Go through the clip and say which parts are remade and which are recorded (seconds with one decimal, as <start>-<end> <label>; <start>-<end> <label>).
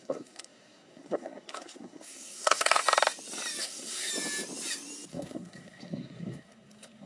0.0-2.8 remade; 2.8-3.6 recorded; 3.6-4.1 remade; 4.1-5.1 recorded; 5.1-7.1 remade